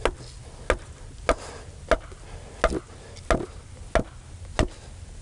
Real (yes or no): yes